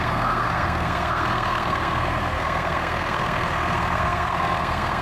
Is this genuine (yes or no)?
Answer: no